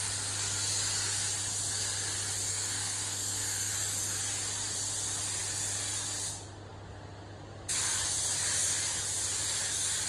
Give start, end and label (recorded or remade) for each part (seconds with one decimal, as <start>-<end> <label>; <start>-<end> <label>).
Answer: 0.0-2.5 recorded; 2.5-3.7 remade; 3.7-10.1 recorded